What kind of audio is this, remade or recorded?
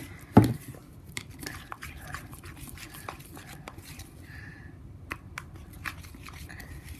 remade